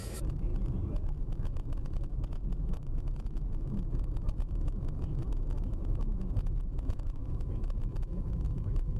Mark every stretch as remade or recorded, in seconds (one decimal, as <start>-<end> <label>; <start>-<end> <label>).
0.0-0.5 remade; 0.5-1.2 recorded; 1.2-2.1 remade; 2.1-2.6 recorded; 2.6-9.0 remade